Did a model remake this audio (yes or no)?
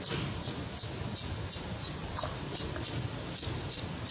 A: no